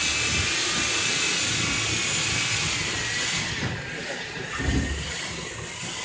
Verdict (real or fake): real